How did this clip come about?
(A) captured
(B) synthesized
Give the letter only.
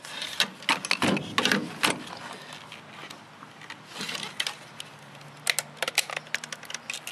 A